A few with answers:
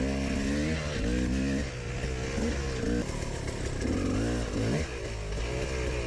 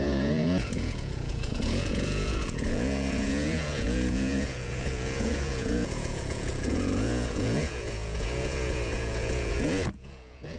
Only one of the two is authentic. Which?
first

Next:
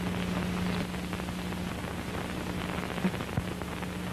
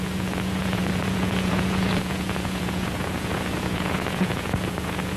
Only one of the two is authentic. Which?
first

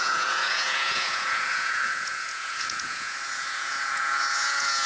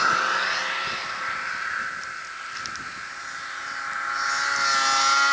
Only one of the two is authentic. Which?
second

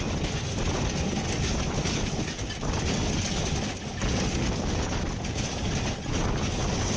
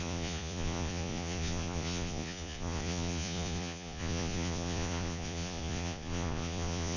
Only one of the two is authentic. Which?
first